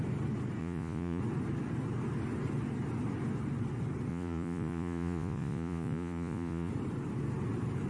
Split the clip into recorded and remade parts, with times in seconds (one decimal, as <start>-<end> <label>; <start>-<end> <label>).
0.0-0.6 recorded; 0.6-1.2 remade; 1.2-4.1 recorded; 4.1-6.7 remade; 6.7-7.9 recorded

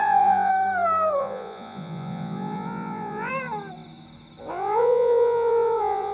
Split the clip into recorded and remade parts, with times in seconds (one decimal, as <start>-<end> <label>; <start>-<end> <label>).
0.0-0.5 remade; 0.5-1.2 recorded; 1.2-3.3 remade; 3.3-4.5 recorded; 4.5-6.1 remade

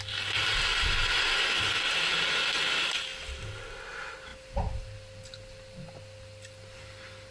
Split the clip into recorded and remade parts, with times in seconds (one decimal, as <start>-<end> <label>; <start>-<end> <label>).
0.0-7.3 recorded